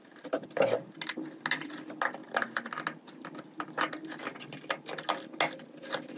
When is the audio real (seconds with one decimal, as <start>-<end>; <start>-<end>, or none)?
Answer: 0.0-6.2